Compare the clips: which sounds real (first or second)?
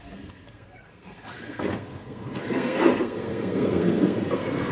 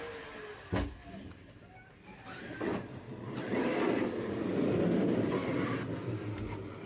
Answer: second